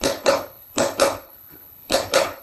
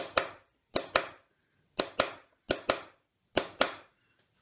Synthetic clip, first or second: first